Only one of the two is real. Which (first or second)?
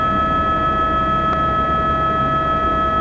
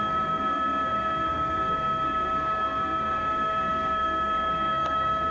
first